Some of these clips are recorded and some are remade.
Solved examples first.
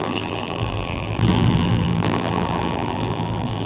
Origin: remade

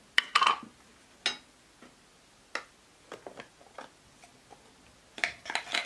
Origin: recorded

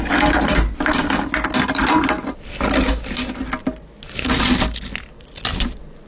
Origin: recorded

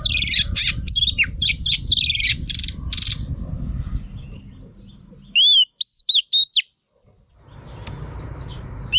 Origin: recorded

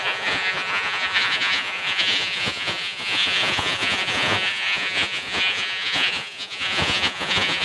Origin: remade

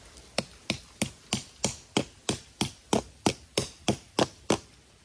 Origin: recorded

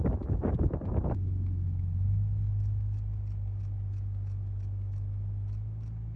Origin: remade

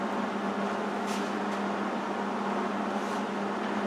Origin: recorded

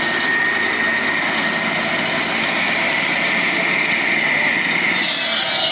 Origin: recorded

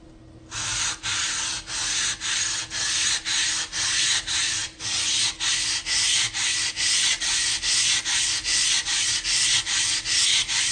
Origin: recorded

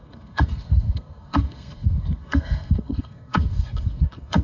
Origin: remade